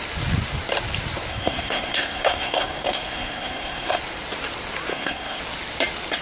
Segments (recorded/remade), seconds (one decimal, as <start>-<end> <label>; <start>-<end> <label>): 0.0-1.3 recorded; 1.3-4.0 remade; 4.0-4.9 recorded; 4.9-5.4 remade; 5.4-6.2 recorded